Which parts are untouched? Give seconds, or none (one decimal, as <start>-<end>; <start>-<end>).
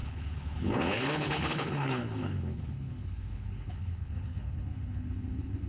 none